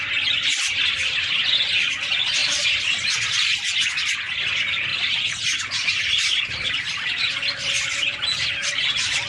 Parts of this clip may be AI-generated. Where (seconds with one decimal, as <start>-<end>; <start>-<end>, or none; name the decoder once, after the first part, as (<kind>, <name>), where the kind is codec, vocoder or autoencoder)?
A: none